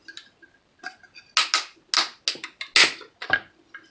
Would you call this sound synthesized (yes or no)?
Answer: no